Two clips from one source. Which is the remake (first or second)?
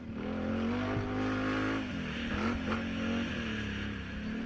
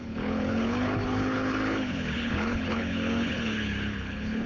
second